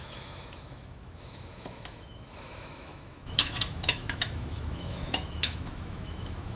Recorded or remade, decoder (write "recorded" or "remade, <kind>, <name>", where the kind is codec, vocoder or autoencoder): remade, autoencoder, DAC-VAE